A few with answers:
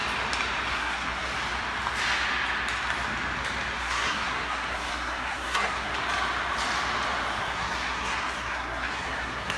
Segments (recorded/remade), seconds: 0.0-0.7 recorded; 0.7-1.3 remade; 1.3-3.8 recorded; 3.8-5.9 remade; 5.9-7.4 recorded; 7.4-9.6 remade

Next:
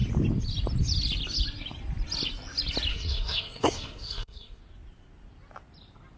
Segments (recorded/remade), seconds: 0.0-2.9 recorded; 2.9-4.6 remade; 4.6-6.2 recorded

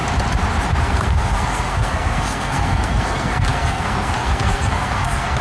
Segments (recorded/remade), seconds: 0.0-0.8 recorded; 0.8-5.4 remade

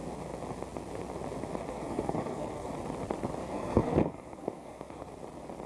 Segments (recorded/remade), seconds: 0.0-1.7 recorded; 1.7-2.7 remade; 2.7-3.4 recorded; 3.4-5.1 remade; 5.1-5.7 recorded